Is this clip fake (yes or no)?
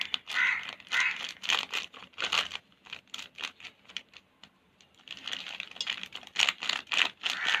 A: no